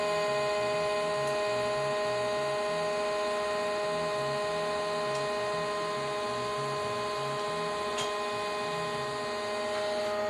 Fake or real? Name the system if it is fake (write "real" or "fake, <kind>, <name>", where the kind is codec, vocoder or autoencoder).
real